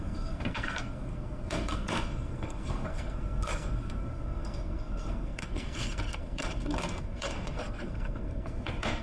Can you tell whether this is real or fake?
fake